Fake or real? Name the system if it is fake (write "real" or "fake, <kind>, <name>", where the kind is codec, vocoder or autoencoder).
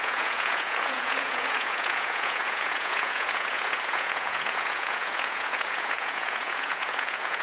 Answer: fake, vocoder, Vocos